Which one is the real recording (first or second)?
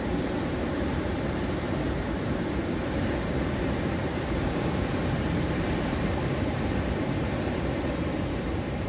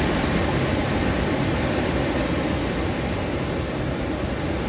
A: second